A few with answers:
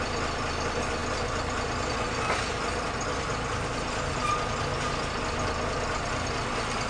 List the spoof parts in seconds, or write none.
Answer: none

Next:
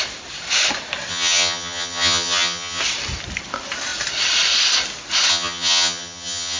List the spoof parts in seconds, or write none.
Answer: 1.1-2.8; 5.3-6.6

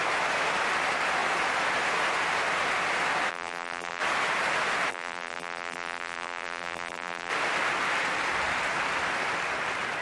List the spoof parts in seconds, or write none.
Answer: 3.3-4.0; 4.9-7.3

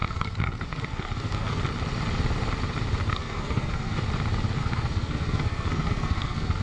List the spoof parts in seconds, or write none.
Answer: 0.0-1.6; 3.0-4.0; 4.6-6.6